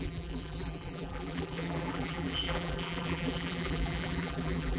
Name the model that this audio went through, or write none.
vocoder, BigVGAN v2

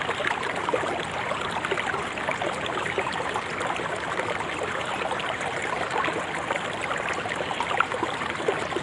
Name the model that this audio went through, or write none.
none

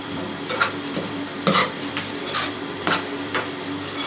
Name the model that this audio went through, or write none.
vocoder, BigVGAN v2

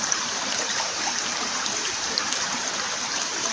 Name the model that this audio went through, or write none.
vocoder, BigVGAN v2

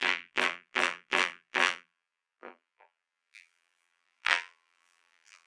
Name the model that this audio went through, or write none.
vocoder, BigVGAN v2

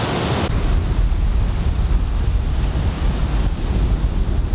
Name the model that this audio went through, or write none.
none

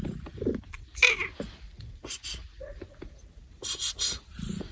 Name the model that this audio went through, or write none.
none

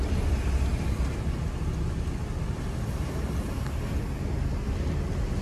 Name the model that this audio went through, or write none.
none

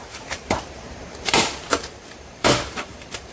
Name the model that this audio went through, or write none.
vocoder, BigVGAN v2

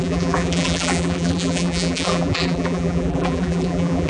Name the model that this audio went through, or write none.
vocoder, BigVGAN v2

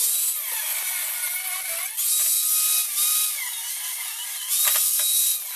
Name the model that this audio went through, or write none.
none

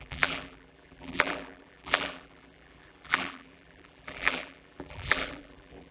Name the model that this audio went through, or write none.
vocoder, BigVGAN v2